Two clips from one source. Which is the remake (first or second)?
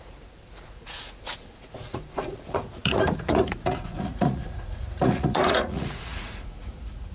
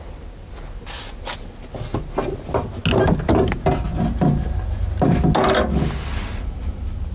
first